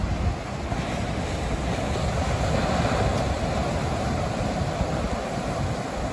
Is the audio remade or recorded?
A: recorded